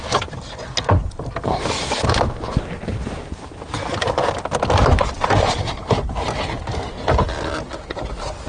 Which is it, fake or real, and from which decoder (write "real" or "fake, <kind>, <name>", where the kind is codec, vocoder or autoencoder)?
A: real